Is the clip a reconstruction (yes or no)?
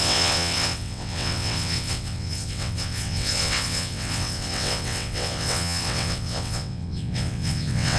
yes